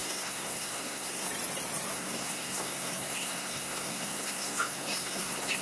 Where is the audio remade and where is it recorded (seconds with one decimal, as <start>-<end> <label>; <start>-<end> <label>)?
0.0-1.3 remade; 1.3-1.9 recorded; 1.9-5.6 remade